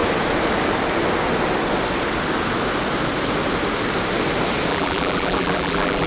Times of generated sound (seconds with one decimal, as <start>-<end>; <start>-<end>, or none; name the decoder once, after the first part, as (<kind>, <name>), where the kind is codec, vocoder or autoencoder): 4.7-6.1 (vocoder, BigVGAN v2)